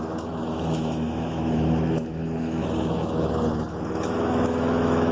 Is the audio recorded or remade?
remade